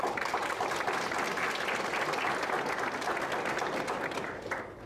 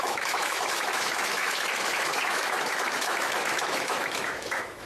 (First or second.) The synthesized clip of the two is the second